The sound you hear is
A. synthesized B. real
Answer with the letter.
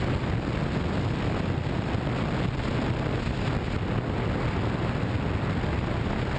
B